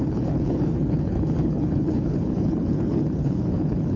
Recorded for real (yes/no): no